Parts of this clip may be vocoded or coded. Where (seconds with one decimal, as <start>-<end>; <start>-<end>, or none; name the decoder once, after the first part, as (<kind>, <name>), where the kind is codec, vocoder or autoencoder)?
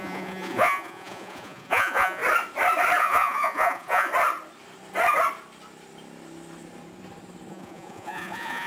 0.0-2.2 (vocoder, Vocos); 3.0-4.1; 7.5-8.7